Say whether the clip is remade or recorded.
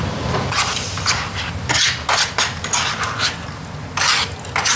recorded